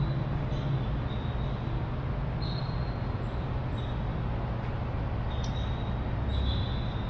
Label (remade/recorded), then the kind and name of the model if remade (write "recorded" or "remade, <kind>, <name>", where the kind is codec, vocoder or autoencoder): recorded